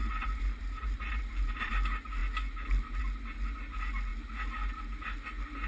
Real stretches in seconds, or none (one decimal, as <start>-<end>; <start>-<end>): 1.7-5.7